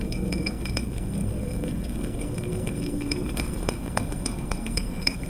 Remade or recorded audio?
remade